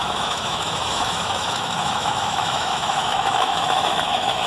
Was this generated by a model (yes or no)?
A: yes